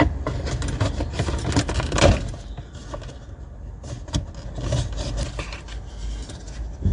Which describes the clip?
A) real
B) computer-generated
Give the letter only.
A